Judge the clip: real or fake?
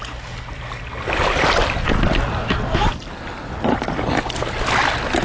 real